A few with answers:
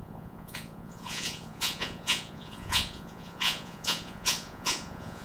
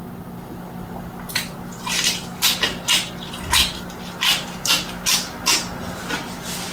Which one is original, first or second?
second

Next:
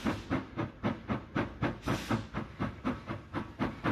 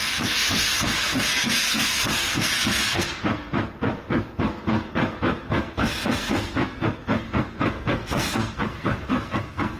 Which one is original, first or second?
first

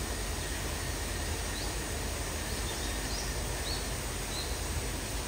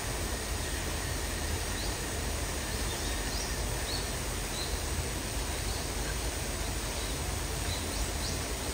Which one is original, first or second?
first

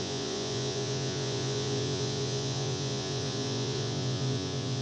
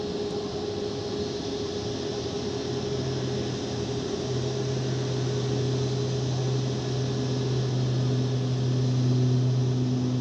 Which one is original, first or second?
second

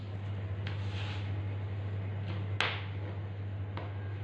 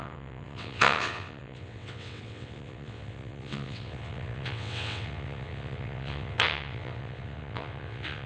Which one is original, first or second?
first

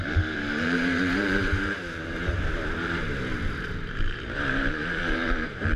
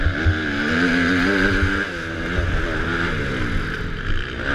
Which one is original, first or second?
second